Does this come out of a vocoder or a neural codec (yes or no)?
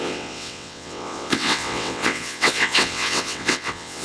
yes